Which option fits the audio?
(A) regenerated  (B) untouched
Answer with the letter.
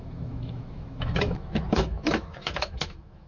A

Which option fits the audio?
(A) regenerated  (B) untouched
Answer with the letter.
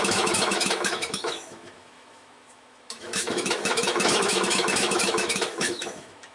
A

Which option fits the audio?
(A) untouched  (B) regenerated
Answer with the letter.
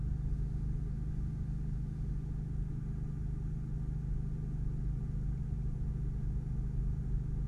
A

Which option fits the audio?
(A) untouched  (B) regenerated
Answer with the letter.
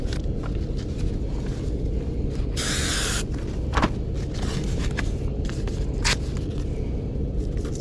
A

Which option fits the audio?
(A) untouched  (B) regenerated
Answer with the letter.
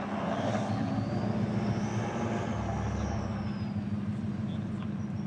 A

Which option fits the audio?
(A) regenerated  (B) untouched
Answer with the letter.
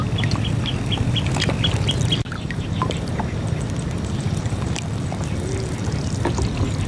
B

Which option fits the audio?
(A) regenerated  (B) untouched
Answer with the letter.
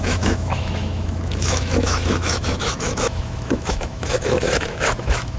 A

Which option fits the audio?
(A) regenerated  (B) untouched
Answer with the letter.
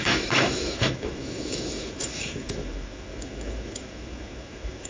A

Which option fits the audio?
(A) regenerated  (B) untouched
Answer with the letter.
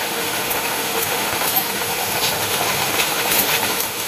A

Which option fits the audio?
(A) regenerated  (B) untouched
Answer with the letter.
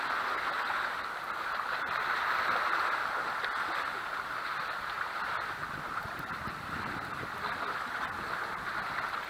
B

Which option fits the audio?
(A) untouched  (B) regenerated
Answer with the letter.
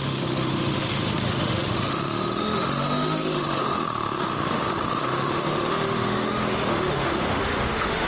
B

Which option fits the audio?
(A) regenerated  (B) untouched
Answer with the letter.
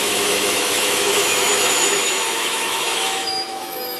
A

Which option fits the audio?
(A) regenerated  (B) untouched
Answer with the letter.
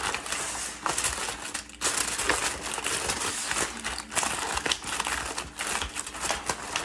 B